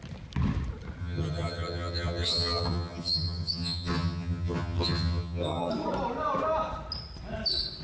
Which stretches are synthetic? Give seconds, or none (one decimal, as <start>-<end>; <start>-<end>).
1.0-5.7